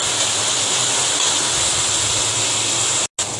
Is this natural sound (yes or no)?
yes